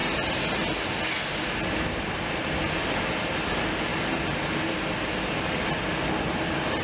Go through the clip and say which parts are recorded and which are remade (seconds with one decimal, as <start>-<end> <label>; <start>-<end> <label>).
0.0-6.8 recorded